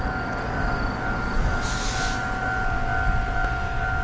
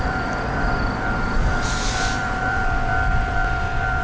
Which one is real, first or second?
first